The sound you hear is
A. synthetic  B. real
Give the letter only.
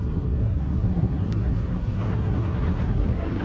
A